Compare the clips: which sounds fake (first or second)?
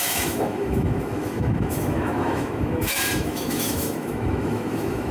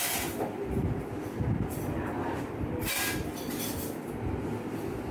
first